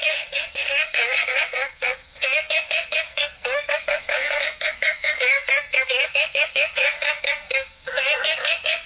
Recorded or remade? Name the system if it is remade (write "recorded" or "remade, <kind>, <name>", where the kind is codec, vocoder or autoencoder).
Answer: remade, codec, SNAC